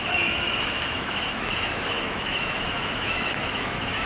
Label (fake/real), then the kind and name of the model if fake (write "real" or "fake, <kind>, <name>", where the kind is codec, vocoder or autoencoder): fake, autoencoder, DAC-VAE